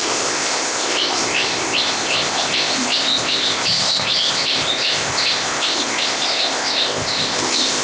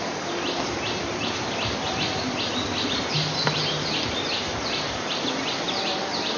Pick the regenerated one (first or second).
first